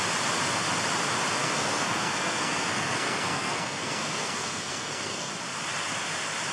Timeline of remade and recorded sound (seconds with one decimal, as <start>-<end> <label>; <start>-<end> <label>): 0.0-1.4 recorded; 1.4-5.3 remade; 5.3-6.5 recorded